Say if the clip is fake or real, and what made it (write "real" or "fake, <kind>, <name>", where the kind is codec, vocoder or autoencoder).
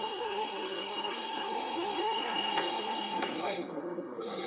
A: fake, codec, SNAC